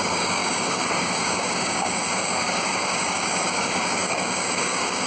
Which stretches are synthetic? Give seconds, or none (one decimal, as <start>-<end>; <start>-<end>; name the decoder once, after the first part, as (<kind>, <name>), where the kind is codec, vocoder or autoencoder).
0.0-5.1 (codec, DAC)